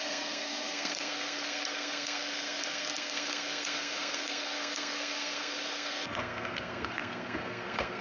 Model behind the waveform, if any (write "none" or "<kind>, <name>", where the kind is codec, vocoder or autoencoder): codec, SNAC